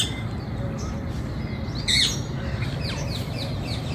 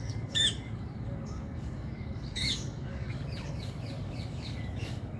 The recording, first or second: first